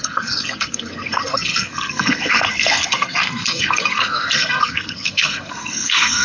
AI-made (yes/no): yes